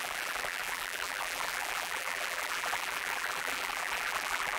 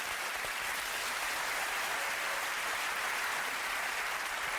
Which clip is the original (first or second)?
second